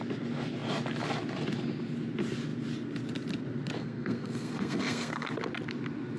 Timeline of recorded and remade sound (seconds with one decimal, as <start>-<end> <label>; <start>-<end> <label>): 0.0-3.8 recorded; 3.8-5.3 remade; 5.3-6.2 recorded